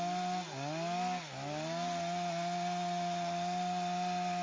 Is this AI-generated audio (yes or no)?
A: no